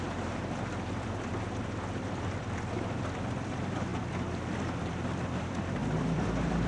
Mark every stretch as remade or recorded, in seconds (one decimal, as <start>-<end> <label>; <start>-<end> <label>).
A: 0.0-3.9 remade; 3.9-4.8 recorded; 4.8-6.7 remade